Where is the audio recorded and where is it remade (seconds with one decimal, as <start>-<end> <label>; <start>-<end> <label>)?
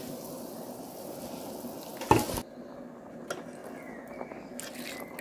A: 0.0-5.2 recorded